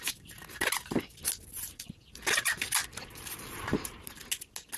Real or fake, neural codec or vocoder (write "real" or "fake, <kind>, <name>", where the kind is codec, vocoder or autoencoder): real